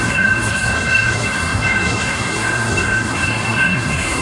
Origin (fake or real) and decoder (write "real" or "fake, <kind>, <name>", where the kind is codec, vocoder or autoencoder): fake, codec, SNAC